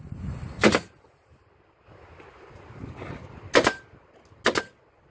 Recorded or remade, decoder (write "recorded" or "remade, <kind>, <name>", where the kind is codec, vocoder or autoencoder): recorded